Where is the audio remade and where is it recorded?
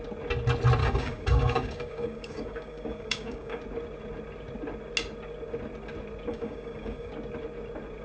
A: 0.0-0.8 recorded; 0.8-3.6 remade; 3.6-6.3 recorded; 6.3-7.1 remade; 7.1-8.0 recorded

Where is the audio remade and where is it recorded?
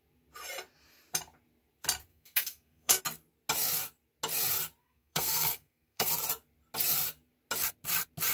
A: 0.0-2.1 recorded; 2.1-3.0 remade; 3.0-4.8 recorded; 4.8-6.1 remade; 6.1-8.3 recorded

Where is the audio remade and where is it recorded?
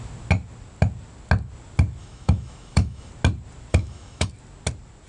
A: 0.0-2.0 recorded; 2.0-3.1 remade; 3.1-3.7 recorded; 3.7-4.3 remade; 4.3-5.1 recorded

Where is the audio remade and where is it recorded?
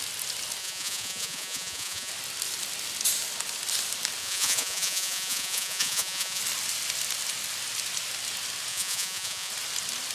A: 0.0-0.6 recorded; 0.6-2.1 remade; 2.1-4.2 recorded; 4.2-6.4 remade; 6.4-8.7 recorded; 8.7-9.5 remade; 9.5-10.1 recorded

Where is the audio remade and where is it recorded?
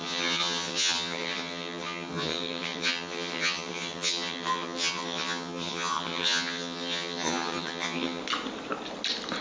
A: 0.0-8.2 remade; 8.2-9.4 recorded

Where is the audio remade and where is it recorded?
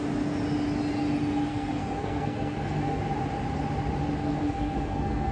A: 0.0-1.5 recorded; 1.5-3.0 remade; 3.0-4.2 recorded; 4.2-5.3 remade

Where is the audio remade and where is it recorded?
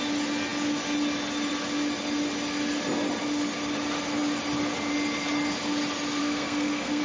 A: 0.0-6.2 recorded; 6.2-7.0 remade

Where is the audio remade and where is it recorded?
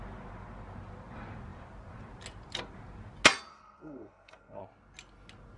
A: 0.0-3.5 recorded; 3.5-4.6 remade; 4.6-5.6 recorded